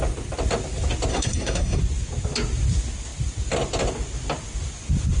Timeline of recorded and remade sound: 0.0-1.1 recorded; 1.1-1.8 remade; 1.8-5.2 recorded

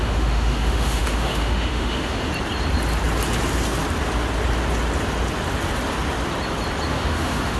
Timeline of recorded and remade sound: 0.0-2.3 remade; 2.3-6.9 recorded; 6.9-7.6 remade

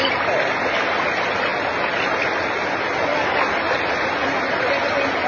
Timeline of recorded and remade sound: 0.0-5.3 recorded

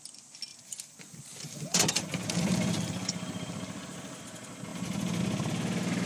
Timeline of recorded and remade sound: 0.0-0.5 recorded; 0.5-4.2 remade; 4.2-4.7 recorded; 4.7-5.2 remade; 5.2-6.1 recorded

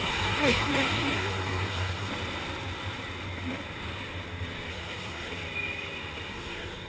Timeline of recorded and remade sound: 0.0-2.1 remade; 2.1-4.7 recorded; 4.7-5.3 remade; 5.3-6.3 recorded; 6.3-6.9 remade

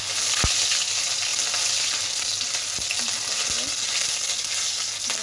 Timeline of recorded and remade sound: 0.0-5.2 recorded